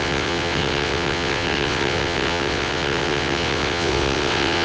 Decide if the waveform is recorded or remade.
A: remade